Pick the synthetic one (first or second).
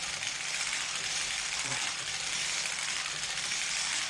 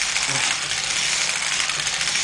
first